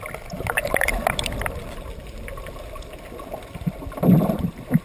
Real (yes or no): yes